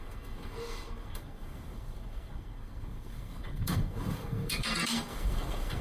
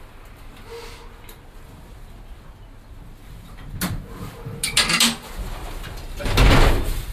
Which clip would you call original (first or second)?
second